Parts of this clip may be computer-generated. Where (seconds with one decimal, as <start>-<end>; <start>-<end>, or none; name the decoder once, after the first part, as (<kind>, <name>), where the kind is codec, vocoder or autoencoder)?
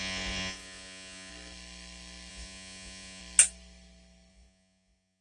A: 0.0-1.3 (vocoder, Vocos); 2.3-3.2; 4.3-5.2